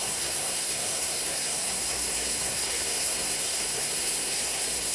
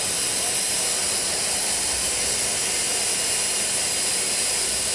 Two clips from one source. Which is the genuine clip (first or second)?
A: second